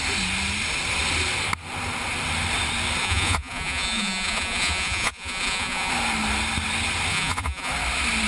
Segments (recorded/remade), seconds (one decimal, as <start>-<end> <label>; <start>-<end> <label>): 0.0-3.0 recorded; 3.0-5.9 remade; 5.9-7.1 recorded; 7.1-7.7 remade; 7.7-8.3 recorded